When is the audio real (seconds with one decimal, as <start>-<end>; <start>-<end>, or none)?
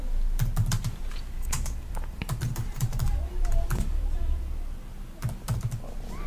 0.0-0.6; 4.4-6.3